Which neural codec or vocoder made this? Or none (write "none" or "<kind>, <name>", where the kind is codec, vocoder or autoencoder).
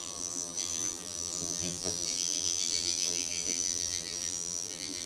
vocoder, BigVGAN v2